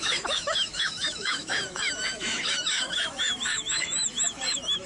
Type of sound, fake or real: fake